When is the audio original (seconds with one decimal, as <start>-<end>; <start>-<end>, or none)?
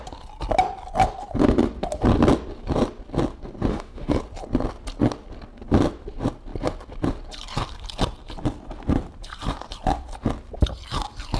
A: 0.0-3.7; 4.2-11.4